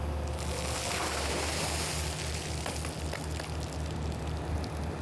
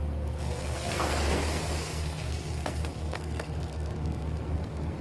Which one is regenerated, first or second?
second